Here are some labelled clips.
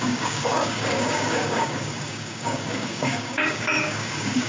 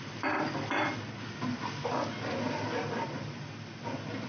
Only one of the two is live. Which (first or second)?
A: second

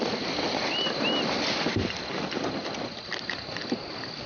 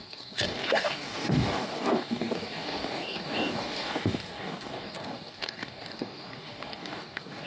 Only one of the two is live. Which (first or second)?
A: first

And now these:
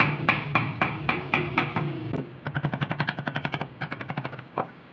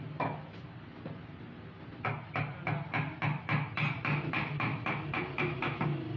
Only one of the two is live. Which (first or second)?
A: second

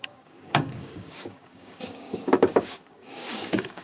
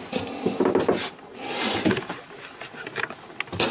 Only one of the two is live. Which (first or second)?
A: second